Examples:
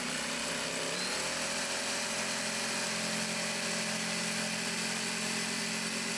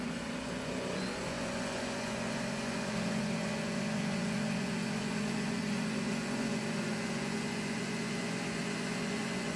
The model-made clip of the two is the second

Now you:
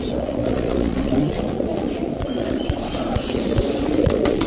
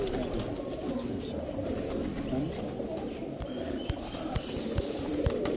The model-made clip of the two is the first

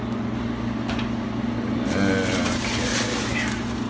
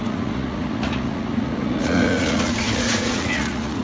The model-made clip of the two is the second